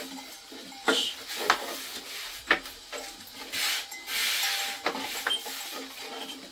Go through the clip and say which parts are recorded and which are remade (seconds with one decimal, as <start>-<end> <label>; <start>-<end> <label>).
0.0-6.5 recorded